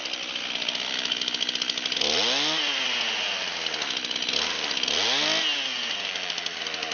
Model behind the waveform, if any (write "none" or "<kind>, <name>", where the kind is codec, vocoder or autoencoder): none